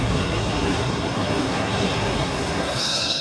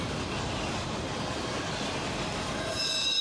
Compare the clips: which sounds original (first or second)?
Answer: second